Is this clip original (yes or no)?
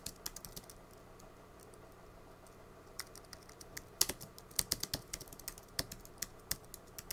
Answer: yes